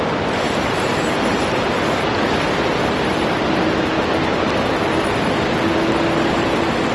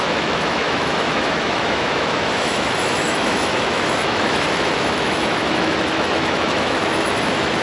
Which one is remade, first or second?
second